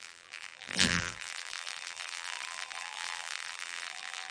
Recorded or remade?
remade